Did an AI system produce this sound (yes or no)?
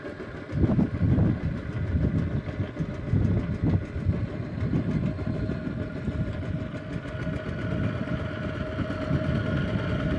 no